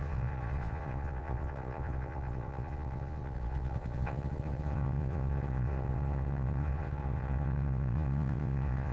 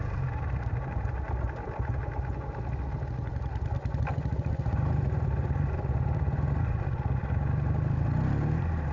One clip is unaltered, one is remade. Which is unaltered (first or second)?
second